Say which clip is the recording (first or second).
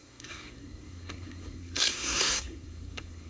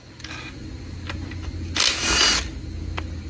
second